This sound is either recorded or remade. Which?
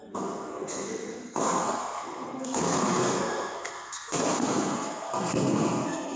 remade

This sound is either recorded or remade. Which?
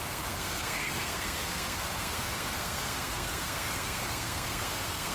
remade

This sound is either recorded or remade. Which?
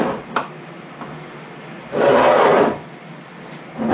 recorded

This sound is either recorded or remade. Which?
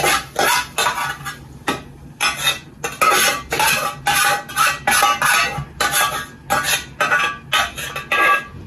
recorded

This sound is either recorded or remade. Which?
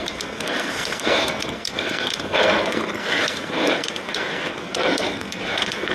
remade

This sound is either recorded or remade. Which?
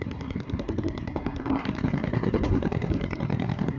remade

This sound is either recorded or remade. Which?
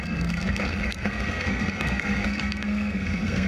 remade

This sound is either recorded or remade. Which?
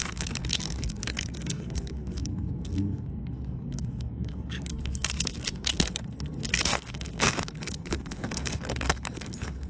remade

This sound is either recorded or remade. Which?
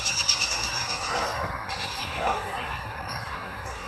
remade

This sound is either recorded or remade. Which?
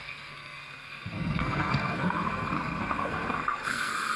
remade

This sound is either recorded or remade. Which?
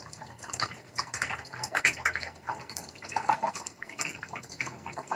remade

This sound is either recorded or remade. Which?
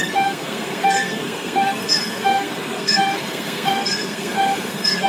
remade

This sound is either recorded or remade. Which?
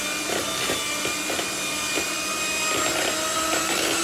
recorded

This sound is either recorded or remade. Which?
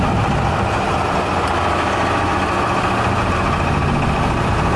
recorded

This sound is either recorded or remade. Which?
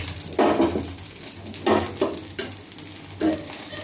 recorded